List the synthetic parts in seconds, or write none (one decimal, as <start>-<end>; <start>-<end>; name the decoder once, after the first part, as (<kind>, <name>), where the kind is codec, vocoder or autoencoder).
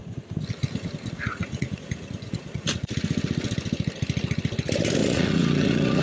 1.3-2.9 (vocoder, Vocos); 5.0-6.0